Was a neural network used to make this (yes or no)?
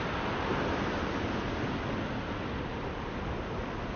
no